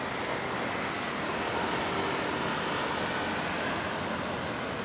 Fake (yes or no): no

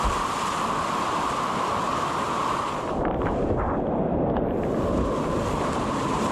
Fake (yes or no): no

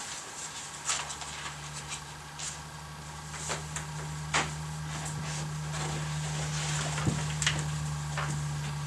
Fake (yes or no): no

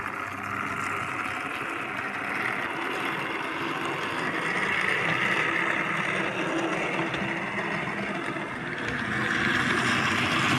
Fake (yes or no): no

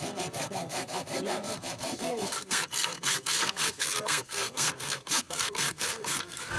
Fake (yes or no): yes